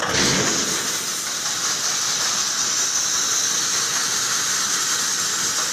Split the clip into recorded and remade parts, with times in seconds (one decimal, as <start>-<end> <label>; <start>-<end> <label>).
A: 0.0-5.7 recorded